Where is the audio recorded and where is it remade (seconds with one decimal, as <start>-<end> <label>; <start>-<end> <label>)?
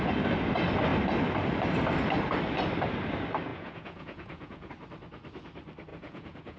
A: 0.0-3.5 recorded; 3.5-4.7 remade; 4.7-5.9 recorded; 5.9-6.6 remade